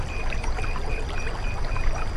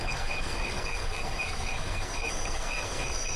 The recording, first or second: first